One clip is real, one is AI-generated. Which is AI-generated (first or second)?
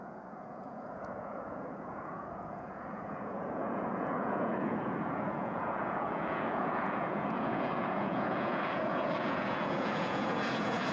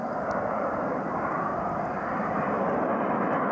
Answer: first